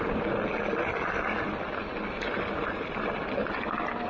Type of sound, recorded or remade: recorded